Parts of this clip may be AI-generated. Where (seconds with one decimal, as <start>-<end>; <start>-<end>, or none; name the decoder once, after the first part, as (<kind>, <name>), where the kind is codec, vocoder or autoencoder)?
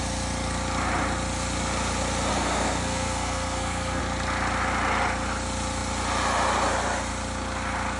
2.3-4.0 (codec, SNAC)